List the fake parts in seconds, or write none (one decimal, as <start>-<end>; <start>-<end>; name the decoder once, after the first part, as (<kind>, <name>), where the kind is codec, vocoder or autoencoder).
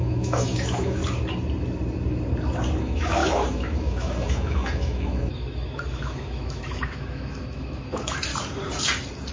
0.0-1.0 (autoencoder, DAC-VAE); 2.8-8.3